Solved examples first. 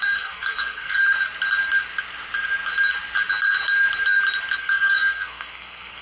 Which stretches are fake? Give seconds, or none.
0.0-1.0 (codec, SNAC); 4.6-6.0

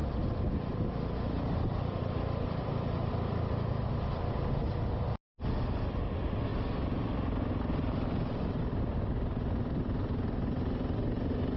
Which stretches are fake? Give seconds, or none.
0.0-3.9 (vocoder, BigVGAN v2)

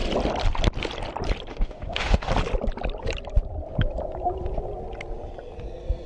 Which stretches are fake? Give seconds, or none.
1.5-2.3 (autoencoder, DAC-VAE)

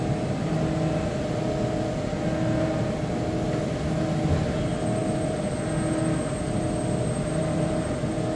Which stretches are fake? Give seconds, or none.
none

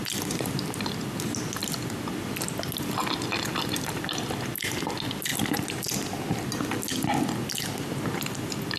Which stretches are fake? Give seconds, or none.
none

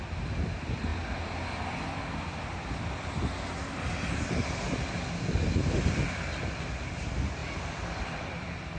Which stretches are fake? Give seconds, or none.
none

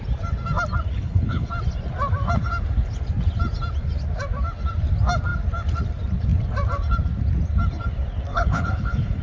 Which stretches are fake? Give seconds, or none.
0.9-1.5 (codec, HILCodec); 8.3-9.2